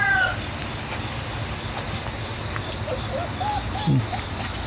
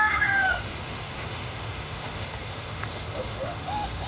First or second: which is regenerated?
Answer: second